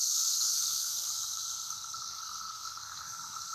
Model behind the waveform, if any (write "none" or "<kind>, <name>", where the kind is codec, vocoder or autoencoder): codec, SNAC